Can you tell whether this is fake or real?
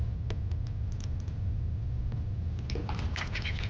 real